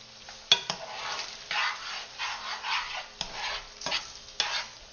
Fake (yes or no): no